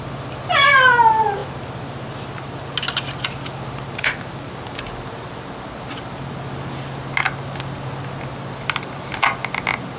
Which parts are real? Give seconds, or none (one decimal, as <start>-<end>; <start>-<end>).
0.0-10.0